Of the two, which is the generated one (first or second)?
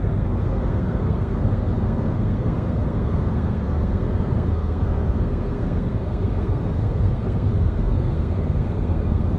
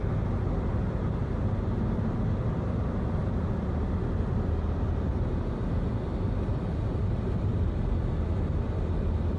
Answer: first